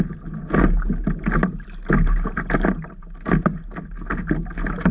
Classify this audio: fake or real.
real